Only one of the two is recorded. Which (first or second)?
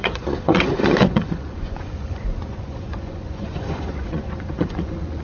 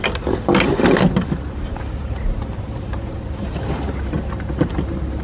second